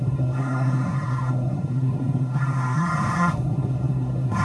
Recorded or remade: remade